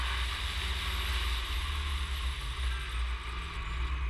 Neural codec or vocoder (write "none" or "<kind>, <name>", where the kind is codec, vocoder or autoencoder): none